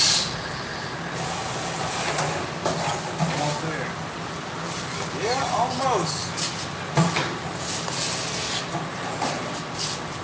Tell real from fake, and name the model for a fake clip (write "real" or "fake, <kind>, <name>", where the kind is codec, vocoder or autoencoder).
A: real